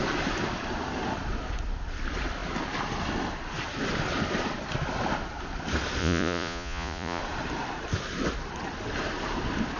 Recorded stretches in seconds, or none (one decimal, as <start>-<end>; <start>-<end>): 0.0-6.0; 7.2-9.8